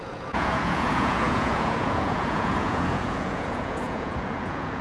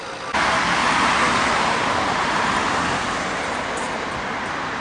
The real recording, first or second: second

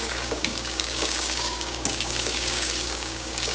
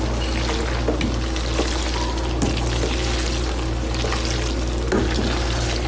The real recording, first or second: second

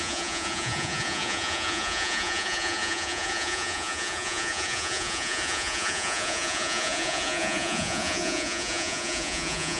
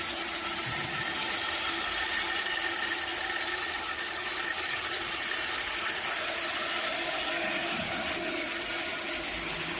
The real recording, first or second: second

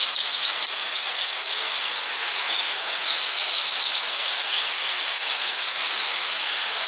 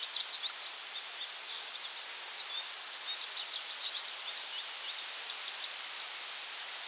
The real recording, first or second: second